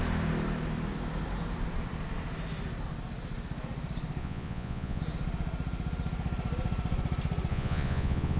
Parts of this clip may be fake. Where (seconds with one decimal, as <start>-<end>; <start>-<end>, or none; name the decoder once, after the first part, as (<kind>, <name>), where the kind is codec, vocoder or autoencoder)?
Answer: 4.2-5.0 (vocoder, Vocos); 7.5-8.4

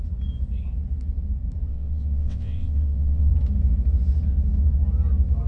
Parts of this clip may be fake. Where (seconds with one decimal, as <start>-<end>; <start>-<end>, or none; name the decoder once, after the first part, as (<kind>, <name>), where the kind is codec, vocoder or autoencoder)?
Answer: 1.7-3.3 (vocoder, WaveNeXt)

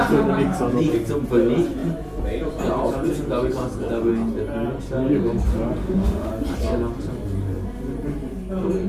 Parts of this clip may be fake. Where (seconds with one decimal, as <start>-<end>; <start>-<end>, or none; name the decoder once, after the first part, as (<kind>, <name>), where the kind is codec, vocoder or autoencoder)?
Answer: 5.8-6.3 (autoencoder, DAC-VAE)